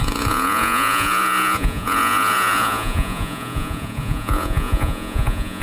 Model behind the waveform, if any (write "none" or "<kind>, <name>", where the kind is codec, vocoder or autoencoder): vocoder, Vocos